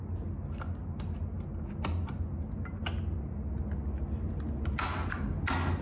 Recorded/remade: recorded